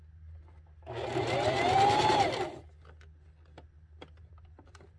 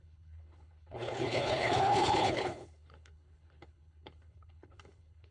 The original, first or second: first